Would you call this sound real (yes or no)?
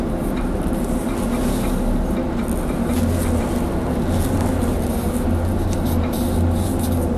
yes